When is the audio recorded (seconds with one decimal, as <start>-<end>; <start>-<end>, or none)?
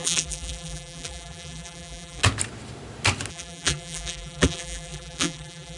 2.2-3.3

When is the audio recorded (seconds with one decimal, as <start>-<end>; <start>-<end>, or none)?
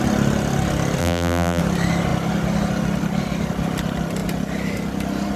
0.0-1.0; 1.6-5.4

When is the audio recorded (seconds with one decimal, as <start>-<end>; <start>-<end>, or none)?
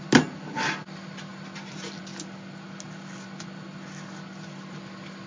0.0-1.3; 2.0-5.3